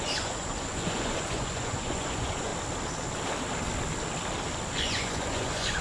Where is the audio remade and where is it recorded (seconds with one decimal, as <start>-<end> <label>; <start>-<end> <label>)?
0.0-2.5 remade; 2.5-4.8 recorded; 4.8-5.8 remade